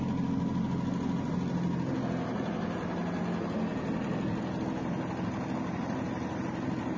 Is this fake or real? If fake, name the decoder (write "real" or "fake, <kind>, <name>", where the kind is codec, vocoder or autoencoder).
real